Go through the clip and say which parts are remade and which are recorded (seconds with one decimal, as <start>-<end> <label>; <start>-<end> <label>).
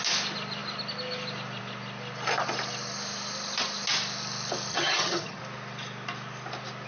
0.0-4.7 recorded; 4.7-5.4 remade; 5.4-6.9 recorded